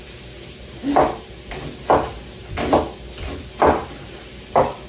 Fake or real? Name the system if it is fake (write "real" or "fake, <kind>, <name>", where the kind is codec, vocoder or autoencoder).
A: real